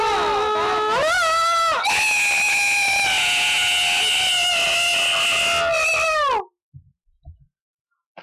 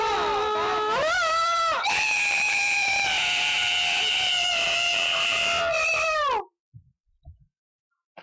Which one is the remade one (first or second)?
second